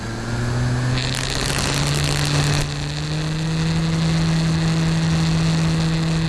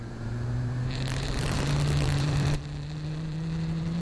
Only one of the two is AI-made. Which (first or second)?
second